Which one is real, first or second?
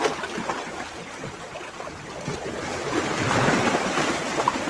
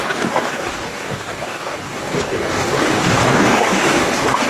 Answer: first